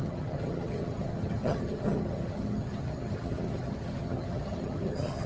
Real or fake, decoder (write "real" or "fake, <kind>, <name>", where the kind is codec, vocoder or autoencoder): fake, vocoder, HiFi-GAN